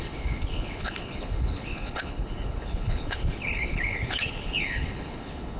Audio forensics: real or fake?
fake